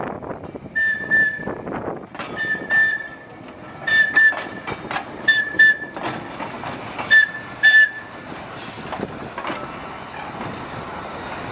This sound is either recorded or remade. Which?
recorded